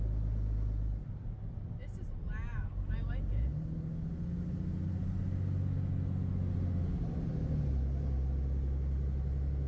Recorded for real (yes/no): yes